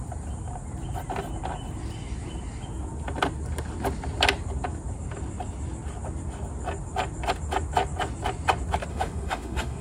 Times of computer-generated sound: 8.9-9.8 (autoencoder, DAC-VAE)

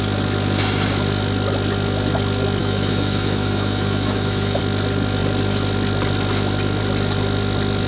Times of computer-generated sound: 2.6-4.6 (autoencoder, DAC-VAE)

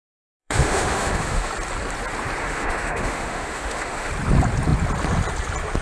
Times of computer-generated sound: 0.4-1.5 (autoencoder, DAC-VAE); 2.4-4.1

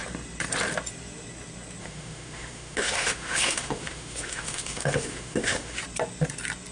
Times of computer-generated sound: 1.8-5.8 (autoencoder, DAC-VAE)

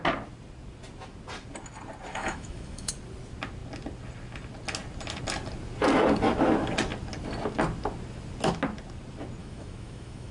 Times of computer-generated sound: 2.1-2.9 (autoencoder, DAC-VAE); 9.4-10.3